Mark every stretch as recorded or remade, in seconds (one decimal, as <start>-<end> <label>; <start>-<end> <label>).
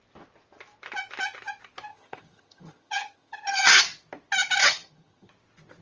0.0-1.9 recorded; 1.9-3.8 remade; 3.8-4.6 recorded; 4.6-5.3 remade; 5.3-5.8 recorded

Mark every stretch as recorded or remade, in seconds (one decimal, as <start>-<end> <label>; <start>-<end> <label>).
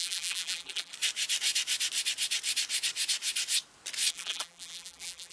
0.0-0.9 remade; 0.9-4.1 recorded; 4.1-5.3 remade